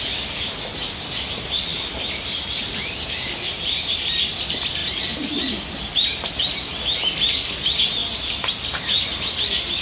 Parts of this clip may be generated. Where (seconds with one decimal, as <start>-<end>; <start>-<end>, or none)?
1.7-4.0; 4.8-5.7